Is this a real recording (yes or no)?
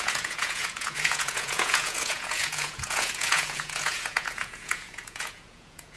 no